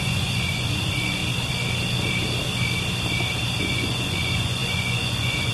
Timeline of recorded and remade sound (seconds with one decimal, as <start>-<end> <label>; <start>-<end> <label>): 0.0-1.2 remade; 1.2-3.6 recorded; 3.6-5.5 remade